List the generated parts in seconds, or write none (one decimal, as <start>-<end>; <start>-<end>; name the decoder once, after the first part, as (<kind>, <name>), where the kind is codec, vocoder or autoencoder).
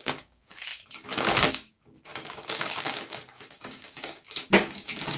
0.0-5.2 (codec, DAC)